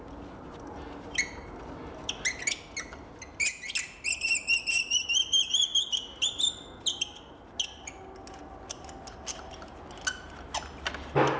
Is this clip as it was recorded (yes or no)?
yes